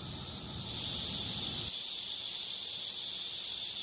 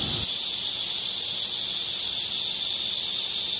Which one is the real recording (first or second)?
second